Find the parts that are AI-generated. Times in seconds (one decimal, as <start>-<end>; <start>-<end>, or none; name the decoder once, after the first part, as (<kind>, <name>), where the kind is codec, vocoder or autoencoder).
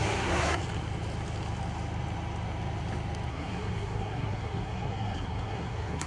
0.0-0.6 (codec, SNAC); 3.3-6.1